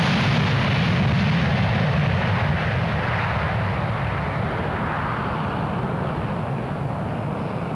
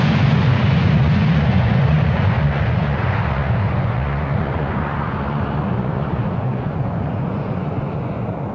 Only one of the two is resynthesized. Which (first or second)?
second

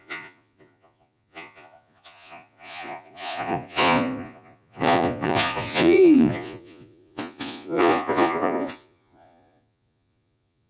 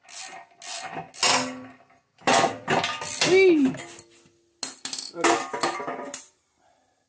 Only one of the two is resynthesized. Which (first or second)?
first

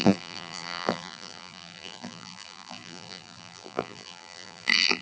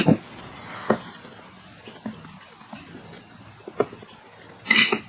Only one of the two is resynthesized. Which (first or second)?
first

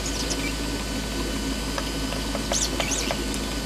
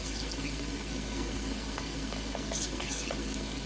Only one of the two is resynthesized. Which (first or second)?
second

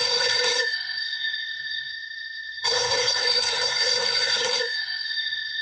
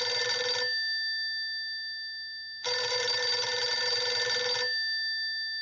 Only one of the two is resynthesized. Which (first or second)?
first